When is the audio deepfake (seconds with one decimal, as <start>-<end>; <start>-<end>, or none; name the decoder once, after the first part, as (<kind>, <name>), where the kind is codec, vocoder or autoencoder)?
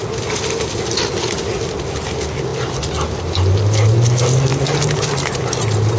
none